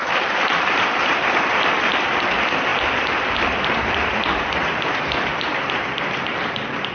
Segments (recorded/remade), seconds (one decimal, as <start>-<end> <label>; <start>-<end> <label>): 0.0-6.9 remade